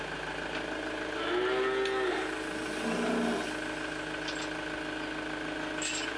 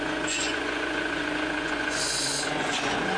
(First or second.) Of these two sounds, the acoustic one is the first